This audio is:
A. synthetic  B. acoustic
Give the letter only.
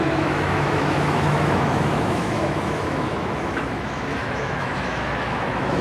A